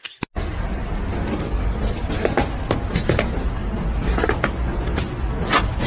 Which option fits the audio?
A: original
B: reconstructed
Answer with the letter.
A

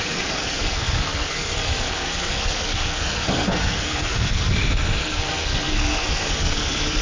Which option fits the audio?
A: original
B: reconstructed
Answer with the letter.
B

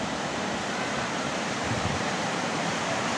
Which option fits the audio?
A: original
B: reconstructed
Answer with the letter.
B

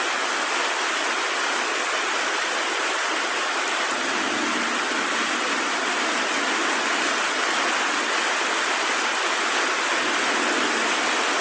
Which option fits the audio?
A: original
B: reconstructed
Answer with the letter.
A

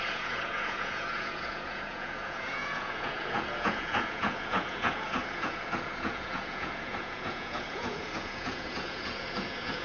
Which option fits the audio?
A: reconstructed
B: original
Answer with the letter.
A